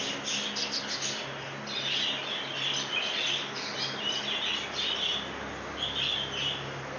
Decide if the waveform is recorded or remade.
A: recorded